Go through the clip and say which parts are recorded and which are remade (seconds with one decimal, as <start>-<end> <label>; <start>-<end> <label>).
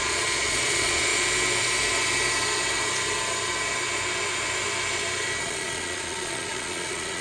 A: 0.0-1.1 remade; 1.1-5.4 recorded; 5.4-7.2 remade